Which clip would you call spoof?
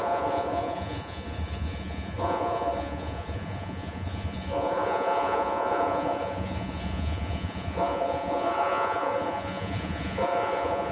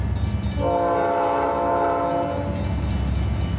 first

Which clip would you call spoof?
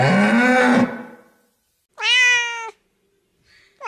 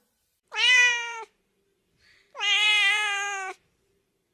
second